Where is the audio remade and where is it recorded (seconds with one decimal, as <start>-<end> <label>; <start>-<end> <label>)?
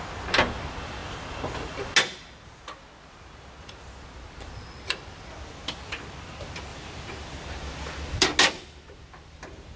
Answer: 0.0-6.7 recorded; 6.7-8.3 remade; 8.3-9.8 recorded